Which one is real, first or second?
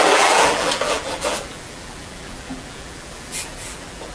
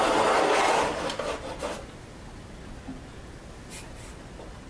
second